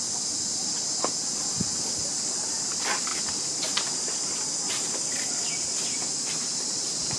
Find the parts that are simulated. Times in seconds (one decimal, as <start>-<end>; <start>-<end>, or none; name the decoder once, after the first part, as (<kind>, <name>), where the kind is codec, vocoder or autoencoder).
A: none